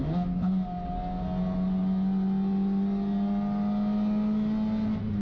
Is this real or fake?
real